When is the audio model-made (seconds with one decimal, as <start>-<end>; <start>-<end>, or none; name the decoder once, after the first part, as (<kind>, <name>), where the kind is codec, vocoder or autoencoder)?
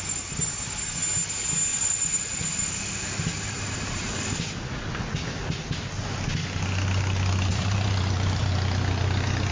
1.7-4.4 (vocoder, BigVGAN v2); 7.5-8.5